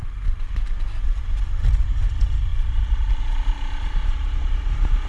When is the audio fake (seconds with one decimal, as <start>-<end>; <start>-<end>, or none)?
none